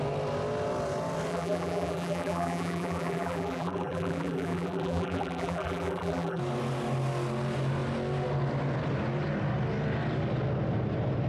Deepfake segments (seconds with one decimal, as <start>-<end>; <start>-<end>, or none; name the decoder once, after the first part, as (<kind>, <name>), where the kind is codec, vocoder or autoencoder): 1.3-6.4 (vocoder, BigVGAN v2)